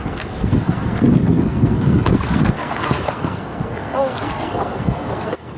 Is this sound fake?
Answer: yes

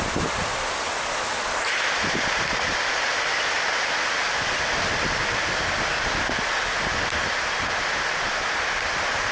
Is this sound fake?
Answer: no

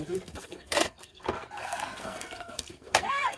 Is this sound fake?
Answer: yes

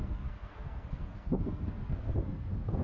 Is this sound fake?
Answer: yes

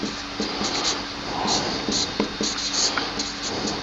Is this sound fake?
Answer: no